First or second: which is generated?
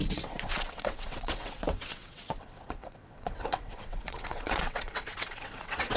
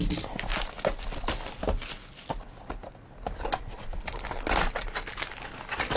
first